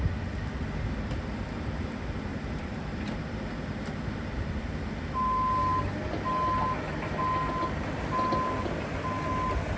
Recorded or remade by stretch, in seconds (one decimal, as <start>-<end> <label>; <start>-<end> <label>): 0.0-2.3 recorded; 2.3-4.9 remade; 4.9-9.8 recorded